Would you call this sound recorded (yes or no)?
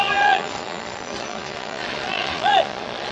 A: no